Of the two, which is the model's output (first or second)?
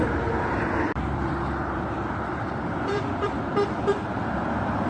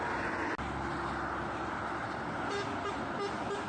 first